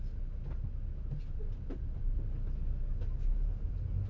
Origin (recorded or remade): recorded